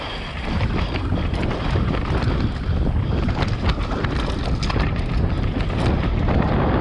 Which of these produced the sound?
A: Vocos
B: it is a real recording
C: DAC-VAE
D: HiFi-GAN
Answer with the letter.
B